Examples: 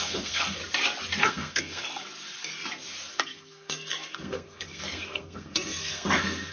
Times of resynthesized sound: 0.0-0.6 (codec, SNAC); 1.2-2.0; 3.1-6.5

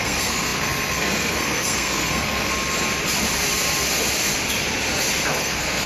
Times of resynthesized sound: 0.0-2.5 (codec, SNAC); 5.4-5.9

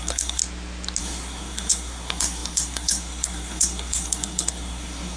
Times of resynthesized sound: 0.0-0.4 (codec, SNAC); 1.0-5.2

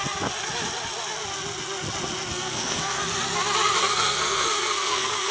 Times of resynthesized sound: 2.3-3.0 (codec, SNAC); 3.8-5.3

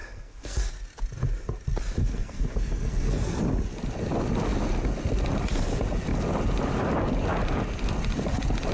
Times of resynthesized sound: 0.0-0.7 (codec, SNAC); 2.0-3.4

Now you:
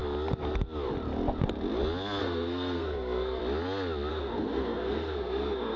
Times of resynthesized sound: 2.2-3.4 (codec, SNAC); 4.1-5.8